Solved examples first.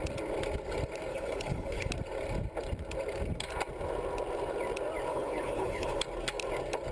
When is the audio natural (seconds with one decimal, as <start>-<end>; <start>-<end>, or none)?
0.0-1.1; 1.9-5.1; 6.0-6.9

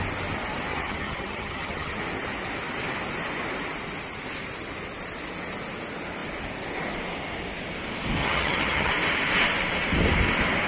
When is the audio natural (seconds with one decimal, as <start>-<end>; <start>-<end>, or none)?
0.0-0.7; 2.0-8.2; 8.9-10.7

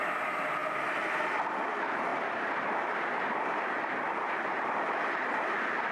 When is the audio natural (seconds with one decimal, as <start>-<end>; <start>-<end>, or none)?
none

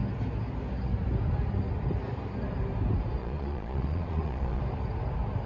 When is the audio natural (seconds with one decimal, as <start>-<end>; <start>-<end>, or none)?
0.0-3.2; 4.6-5.5

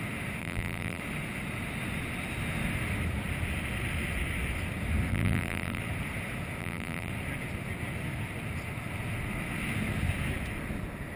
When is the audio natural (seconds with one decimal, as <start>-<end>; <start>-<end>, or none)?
0.0-0.4; 1.0-5.1; 5.8-6.6; 7.1-11.2